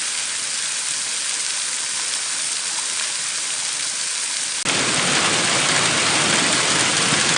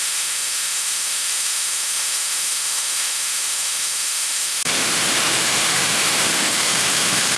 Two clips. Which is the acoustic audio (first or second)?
first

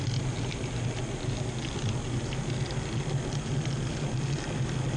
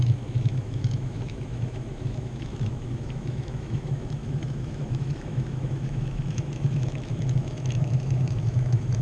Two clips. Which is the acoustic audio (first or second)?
first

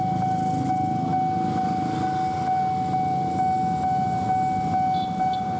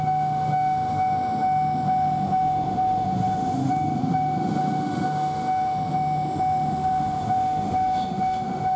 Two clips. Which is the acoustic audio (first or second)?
first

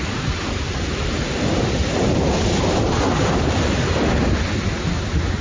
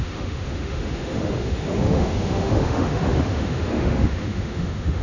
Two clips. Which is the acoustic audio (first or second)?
first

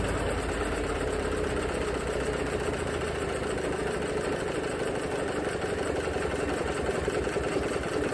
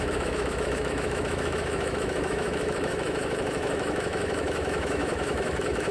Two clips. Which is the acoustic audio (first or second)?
first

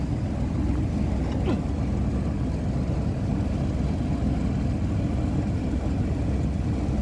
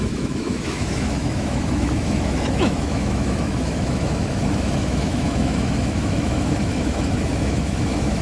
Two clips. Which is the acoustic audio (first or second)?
first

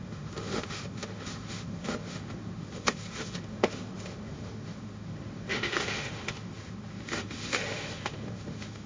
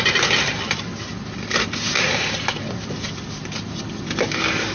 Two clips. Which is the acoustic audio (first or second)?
second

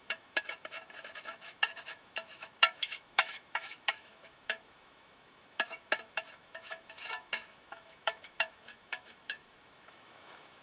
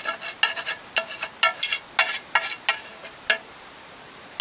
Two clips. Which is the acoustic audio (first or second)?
second